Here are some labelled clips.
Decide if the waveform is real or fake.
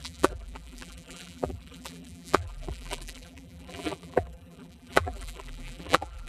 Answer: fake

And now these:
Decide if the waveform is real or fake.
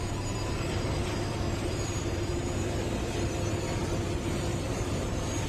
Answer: fake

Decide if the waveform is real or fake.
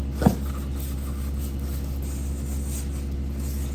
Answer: real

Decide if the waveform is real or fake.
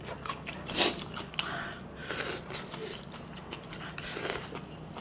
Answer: real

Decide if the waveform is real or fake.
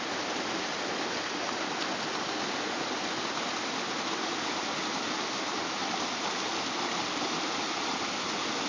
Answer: real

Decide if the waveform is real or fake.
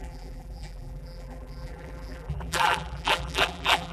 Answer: fake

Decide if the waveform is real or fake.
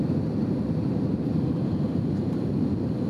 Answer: fake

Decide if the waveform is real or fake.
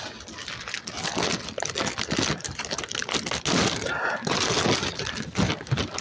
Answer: real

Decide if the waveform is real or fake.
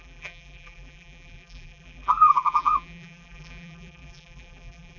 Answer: fake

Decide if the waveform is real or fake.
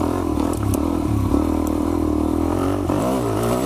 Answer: fake